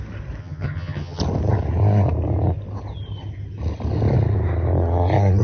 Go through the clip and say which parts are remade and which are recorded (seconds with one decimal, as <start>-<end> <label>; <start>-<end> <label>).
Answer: 0.0-0.4 recorded; 0.4-1.2 remade; 1.2-5.4 recorded